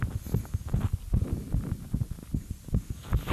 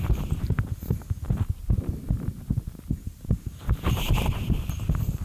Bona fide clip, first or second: first